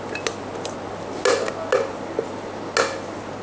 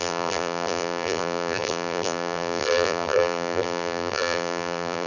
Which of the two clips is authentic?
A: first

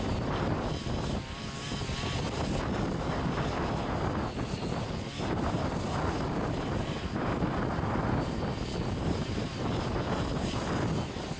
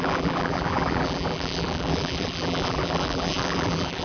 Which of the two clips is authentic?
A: first